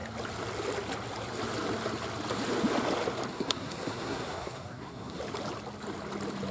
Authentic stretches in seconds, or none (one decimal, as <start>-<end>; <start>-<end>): 0.0-3.3; 5.2-6.5